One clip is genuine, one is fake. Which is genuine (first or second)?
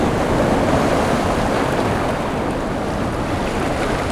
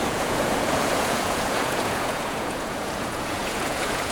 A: first